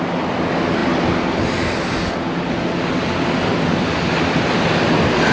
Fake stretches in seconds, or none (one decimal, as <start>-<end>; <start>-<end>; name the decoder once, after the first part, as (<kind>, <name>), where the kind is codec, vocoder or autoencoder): none